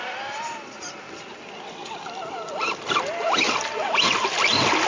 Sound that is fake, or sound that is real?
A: real